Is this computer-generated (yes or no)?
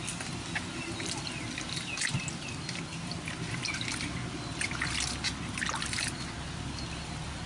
no